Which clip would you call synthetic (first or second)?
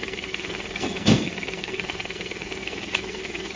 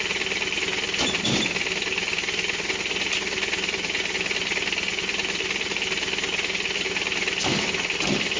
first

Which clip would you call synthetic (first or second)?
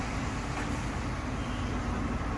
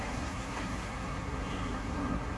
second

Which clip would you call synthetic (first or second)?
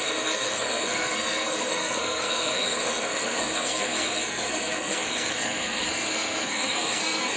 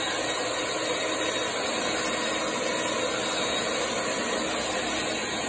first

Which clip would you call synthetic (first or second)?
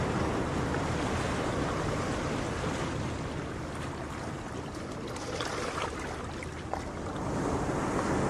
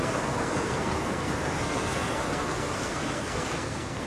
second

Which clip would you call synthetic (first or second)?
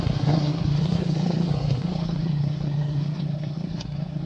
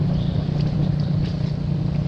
first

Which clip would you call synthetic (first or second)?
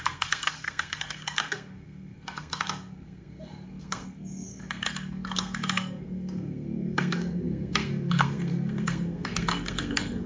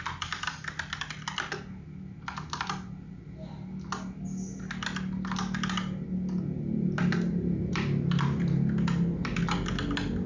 first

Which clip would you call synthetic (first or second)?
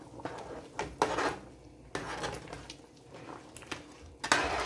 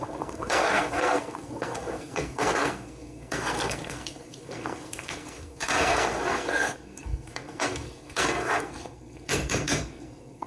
second